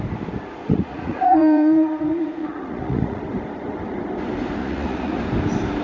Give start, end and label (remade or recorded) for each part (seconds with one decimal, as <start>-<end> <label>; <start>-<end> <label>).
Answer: 0.0-0.6 recorded; 0.6-3.2 remade; 3.2-4.6 recorded; 4.6-5.2 remade; 5.2-5.8 recorded